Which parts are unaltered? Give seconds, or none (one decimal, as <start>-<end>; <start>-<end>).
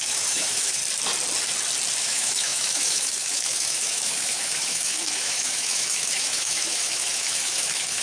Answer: 0.8-2.0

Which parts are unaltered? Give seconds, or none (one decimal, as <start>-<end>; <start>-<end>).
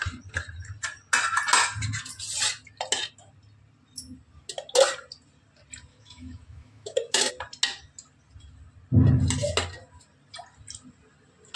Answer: 0.0-5.9; 7.3-11.6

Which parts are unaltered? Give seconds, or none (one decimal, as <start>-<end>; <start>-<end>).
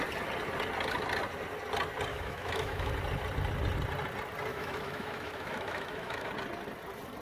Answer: 0.0-2.1; 2.9-4.5; 6.3-7.2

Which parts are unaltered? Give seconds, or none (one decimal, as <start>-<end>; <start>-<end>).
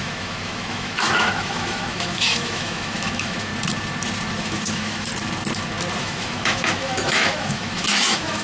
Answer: 3.5-4.4; 5.1-6.0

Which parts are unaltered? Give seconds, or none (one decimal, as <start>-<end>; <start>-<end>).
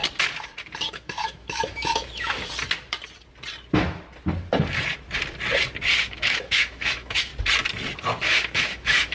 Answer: 0.0-0.9; 2.4-6.1; 7.3-8.2